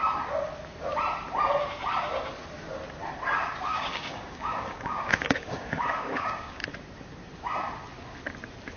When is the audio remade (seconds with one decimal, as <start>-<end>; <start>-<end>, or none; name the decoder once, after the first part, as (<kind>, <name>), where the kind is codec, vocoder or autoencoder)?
3.7-6.6 (codec, DAC)

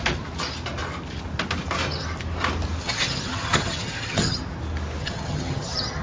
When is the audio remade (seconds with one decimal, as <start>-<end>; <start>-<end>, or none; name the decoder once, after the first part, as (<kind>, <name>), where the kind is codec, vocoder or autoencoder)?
2.8-4.4 (vocoder, HiFi-GAN); 5.0-6.0

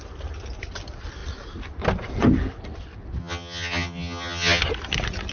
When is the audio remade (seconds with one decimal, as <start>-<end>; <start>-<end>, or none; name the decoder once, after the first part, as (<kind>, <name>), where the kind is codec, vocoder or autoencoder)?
3.2-4.6 (vocoder, HiFi-GAN)

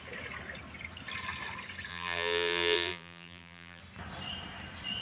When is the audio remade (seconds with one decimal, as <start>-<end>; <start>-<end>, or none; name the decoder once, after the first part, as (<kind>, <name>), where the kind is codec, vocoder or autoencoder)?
1.9-3.8 (vocoder, BigVGAN v2)